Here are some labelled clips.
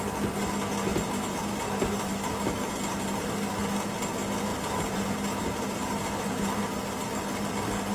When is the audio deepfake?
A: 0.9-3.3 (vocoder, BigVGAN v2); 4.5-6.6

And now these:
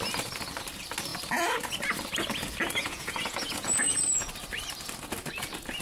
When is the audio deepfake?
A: 2.8-4.3 (vocoder, Vocos)

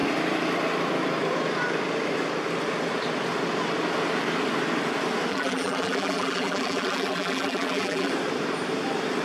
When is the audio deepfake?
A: 5.3-8.1 (vocoder, BigVGAN v2)